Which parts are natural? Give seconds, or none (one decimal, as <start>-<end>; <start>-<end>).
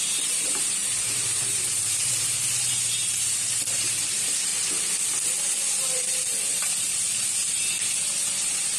4.5-6.5